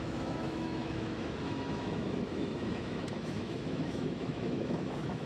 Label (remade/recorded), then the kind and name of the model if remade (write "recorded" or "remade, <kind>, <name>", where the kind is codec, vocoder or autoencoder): remade, autoencoder, DAC-VAE